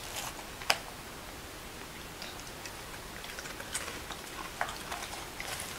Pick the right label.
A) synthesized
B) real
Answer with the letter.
B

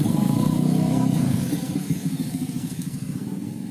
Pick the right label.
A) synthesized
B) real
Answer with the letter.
A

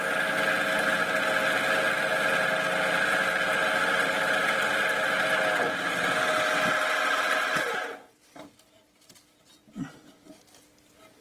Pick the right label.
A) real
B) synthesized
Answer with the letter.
A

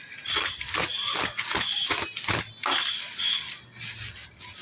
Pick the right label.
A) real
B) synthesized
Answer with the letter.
A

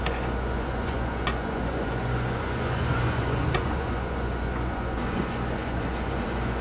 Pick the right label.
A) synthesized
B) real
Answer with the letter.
A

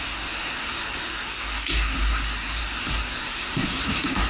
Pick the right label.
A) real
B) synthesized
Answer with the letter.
B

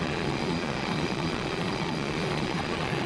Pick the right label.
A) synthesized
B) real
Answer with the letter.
A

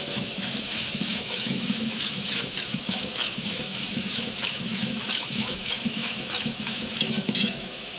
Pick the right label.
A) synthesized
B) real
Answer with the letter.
A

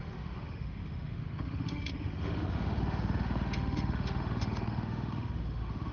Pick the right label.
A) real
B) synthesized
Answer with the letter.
B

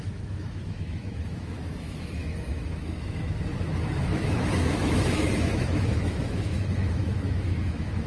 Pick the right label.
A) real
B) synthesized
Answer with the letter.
B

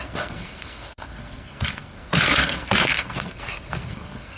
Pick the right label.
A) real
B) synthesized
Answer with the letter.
B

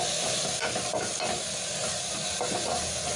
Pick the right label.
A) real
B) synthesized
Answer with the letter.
A